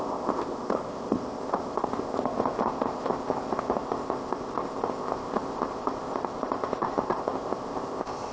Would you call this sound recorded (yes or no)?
no